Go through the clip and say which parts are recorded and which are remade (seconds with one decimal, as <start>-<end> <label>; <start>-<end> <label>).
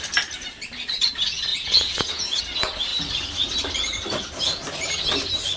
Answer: 0.0-1.5 recorded; 1.5-2.4 remade; 2.4-5.6 recorded